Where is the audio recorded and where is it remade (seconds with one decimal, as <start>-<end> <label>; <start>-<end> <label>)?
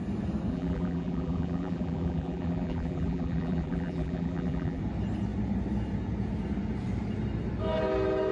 0.0-0.5 recorded; 0.5-4.8 remade; 4.8-8.3 recorded